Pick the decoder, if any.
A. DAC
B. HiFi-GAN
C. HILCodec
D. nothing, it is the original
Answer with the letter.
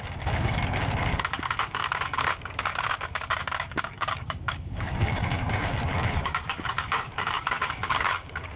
A